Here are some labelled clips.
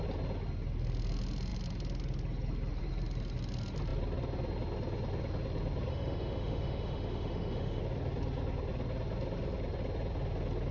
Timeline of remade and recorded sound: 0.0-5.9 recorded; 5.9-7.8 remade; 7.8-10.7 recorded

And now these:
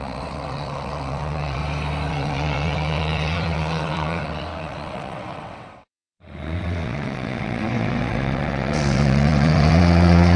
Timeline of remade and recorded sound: 0.0-1.6 remade; 1.6-2.1 recorded; 2.1-10.4 remade

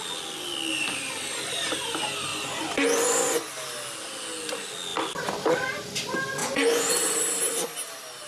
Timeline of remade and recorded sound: 0.0-2.3 recorded; 2.3-3.5 remade; 3.5-6.4 recorded; 6.4-6.9 remade; 6.9-8.3 recorded

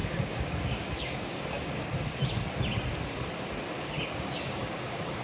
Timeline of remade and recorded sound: 0.0-1.9 remade; 1.9-3.8 recorded; 3.8-5.2 remade

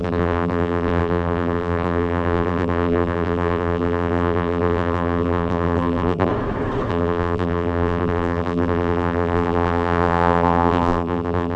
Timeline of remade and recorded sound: 0.0-6.3 remade; 6.3-6.9 recorded; 6.9-11.6 remade

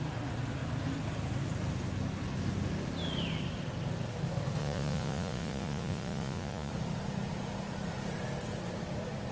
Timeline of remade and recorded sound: 0.0-4.6 recorded; 4.6-6.7 remade; 6.7-9.3 recorded

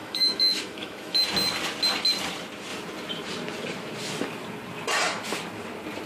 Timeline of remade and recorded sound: 0.0-1.2 remade; 1.2-6.1 recorded